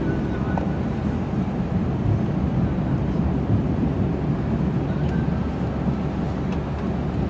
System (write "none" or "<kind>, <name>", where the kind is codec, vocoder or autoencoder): none